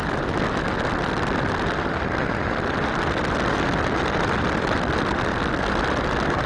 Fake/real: real